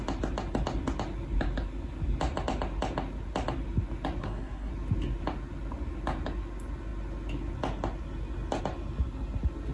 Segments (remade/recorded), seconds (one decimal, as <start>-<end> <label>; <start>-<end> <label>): 0.0-4.2 recorded; 4.2-4.7 remade; 4.7-9.7 recorded